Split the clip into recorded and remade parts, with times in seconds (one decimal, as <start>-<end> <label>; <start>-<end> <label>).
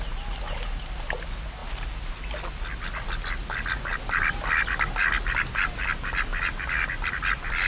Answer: 0.0-3.9 recorded; 3.9-4.6 remade; 4.6-5.0 recorded; 5.0-5.8 remade; 5.8-6.3 recorded; 6.3-7.7 remade